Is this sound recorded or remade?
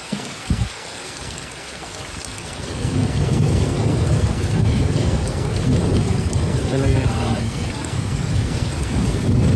remade